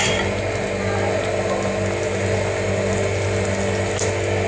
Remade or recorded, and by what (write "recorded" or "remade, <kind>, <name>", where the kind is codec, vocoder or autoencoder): recorded